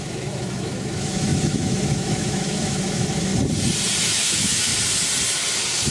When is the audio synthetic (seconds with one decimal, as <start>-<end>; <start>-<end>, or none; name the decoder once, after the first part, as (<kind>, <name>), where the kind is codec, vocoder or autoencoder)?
0.0-3.3 (autoencoder, DAC-VAE); 4.0-4.7